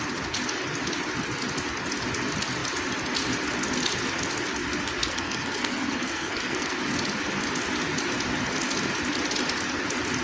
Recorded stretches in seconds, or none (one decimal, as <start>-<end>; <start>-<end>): 0.0-5.0; 6.8-10.2